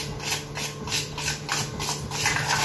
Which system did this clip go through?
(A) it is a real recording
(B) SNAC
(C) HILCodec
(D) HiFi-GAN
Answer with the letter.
A